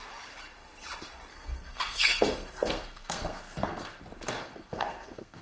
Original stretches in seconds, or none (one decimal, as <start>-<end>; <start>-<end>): 0.0-1.3; 4.0-4.4